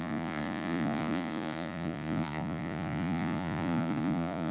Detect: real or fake fake